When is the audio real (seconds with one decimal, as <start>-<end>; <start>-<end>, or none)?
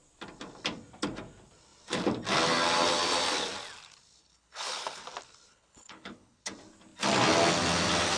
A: 0.0-4.2; 5.0-5.5; 6.5-8.2